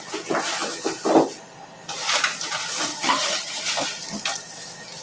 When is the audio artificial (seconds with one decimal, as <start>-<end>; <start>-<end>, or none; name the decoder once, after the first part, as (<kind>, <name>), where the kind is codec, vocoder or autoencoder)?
2.9-3.6 (vocoder, HiFi-GAN)